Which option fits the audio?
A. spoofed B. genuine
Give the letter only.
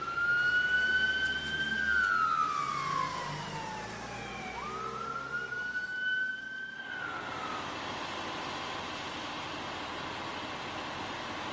B